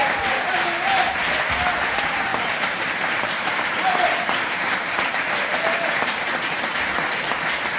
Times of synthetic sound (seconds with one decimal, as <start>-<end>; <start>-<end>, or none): 2.3-6.6